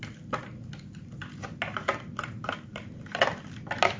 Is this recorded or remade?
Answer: recorded